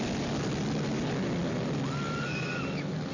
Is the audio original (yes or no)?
yes